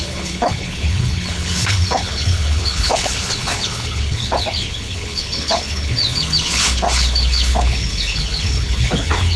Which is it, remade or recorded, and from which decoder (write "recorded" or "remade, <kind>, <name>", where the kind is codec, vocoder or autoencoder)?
remade, codec, HILCodec